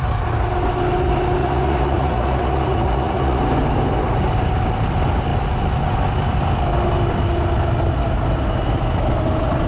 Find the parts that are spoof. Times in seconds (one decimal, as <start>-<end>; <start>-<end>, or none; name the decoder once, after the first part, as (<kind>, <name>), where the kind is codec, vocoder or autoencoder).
1.4-3.4 (vocoder, Vocos)